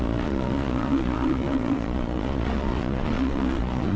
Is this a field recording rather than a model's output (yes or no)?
no